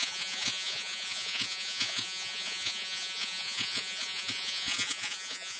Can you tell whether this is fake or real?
fake